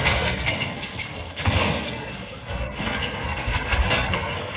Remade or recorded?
remade